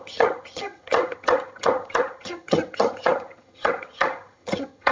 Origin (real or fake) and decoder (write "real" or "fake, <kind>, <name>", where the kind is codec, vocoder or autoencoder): fake, vocoder, HiFi-GAN